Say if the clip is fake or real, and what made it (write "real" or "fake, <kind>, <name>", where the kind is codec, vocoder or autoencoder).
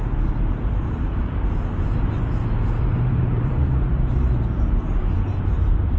fake, vocoder, BigVGAN v2